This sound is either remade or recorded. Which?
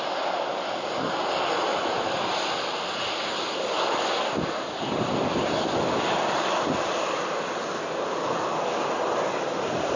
recorded